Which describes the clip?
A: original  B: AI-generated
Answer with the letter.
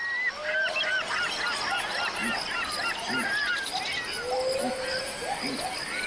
A